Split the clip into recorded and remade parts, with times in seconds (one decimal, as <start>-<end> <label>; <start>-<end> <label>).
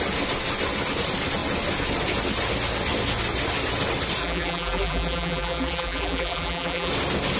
0.0-4.2 recorded; 4.2-6.9 remade; 6.9-7.4 recorded